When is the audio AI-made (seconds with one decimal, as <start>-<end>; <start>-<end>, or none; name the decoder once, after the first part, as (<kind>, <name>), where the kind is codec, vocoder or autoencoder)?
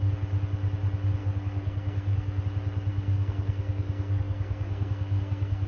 1.2-2.4 (codec, SNAC); 2.9-5.7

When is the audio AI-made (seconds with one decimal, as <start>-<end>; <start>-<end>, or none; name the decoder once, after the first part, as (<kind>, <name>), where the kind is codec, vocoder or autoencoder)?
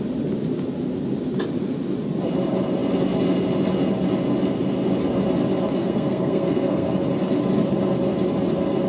5.8-6.9 (codec, SNAC)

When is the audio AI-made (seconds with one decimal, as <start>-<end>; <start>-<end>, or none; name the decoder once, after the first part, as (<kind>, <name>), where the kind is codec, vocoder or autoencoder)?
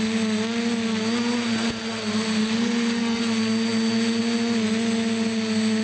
2.4-3.2 (codec, SNAC)